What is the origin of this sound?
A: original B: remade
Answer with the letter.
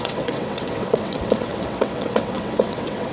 B